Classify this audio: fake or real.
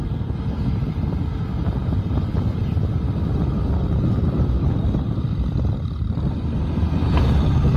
fake